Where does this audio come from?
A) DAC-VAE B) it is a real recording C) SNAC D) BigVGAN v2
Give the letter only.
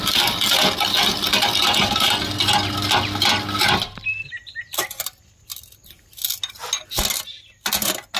B